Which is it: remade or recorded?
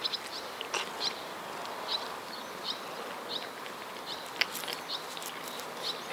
recorded